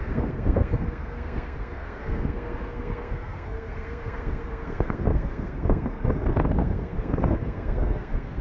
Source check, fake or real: fake